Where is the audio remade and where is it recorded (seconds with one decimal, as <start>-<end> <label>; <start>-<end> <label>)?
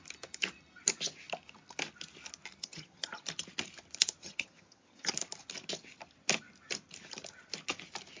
0.0-2.6 recorded; 2.6-3.2 remade; 3.2-4.2 recorded; 4.2-5.1 remade; 5.1-8.2 recorded